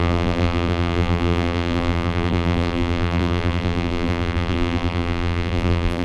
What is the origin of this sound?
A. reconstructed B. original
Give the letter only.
A